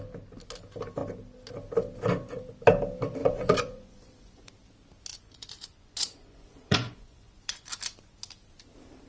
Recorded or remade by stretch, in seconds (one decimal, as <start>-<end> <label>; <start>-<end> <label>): 0.0-3.2 recorded; 3.2-4.5 remade; 4.5-5.1 recorded; 5.1-7.7 remade; 7.7-9.1 recorded